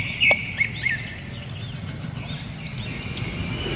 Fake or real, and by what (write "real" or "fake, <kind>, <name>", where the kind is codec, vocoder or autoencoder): real